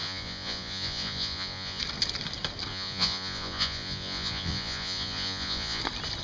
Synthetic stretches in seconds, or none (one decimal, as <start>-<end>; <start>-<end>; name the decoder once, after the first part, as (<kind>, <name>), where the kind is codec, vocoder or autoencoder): 0.0-1.8 (vocoder, Vocos); 2.7-5.8